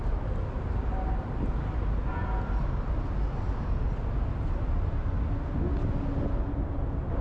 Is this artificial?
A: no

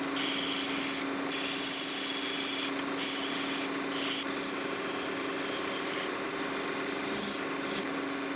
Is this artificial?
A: no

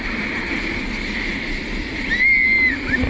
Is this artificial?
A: no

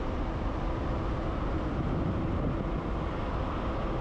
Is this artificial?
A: no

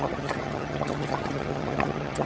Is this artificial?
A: yes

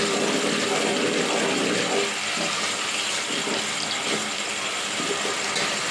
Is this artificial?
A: no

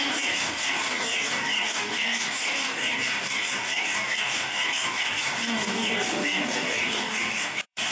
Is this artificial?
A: yes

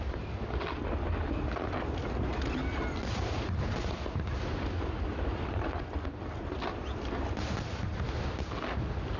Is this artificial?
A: no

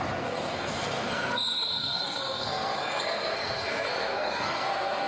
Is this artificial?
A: yes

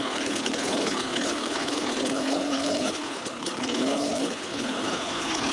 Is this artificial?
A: yes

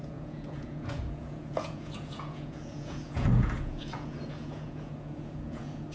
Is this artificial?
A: yes